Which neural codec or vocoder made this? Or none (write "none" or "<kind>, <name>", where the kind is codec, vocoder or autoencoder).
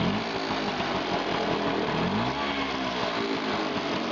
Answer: none